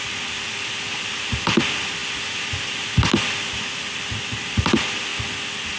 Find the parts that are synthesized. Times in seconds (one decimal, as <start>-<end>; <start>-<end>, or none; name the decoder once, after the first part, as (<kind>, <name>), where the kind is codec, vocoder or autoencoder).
0.0-5.1 (vocoder, BigVGAN v2)